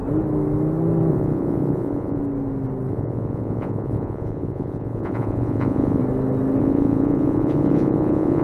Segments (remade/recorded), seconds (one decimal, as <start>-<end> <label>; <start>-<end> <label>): 0.0-1.1 recorded; 1.1-2.2 remade; 2.2-2.9 recorded; 2.9-6.0 remade; 6.0-6.6 recorded; 6.6-8.4 remade